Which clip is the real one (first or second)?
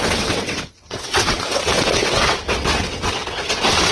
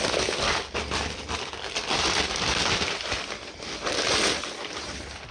second